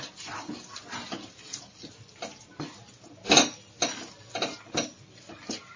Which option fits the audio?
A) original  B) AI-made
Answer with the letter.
A